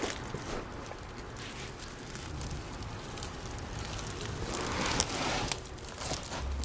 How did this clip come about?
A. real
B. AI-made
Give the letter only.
A